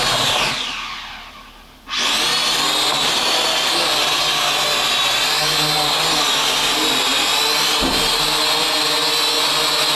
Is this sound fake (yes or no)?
no